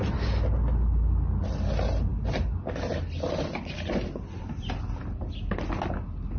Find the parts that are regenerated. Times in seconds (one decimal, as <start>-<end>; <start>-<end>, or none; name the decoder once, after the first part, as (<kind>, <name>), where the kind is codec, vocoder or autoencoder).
none